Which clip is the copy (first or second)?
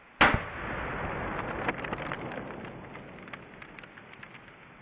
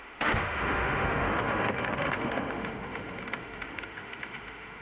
second